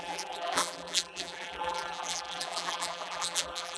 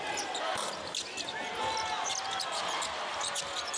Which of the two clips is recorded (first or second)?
second